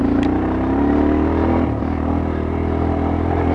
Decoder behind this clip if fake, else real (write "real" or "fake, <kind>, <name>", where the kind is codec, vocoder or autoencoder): real